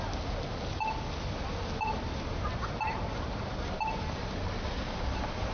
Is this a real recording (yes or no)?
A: yes